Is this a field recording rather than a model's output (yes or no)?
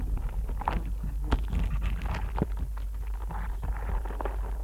yes